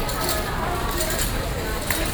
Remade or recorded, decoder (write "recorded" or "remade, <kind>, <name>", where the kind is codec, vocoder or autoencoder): recorded